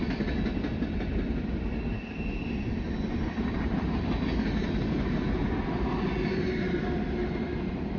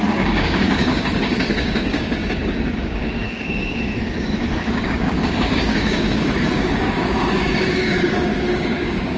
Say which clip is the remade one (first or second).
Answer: second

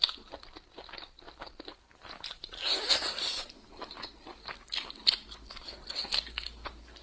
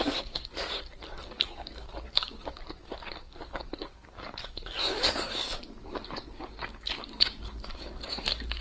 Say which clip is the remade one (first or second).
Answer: second